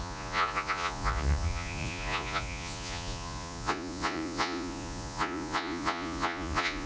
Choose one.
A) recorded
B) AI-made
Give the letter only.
B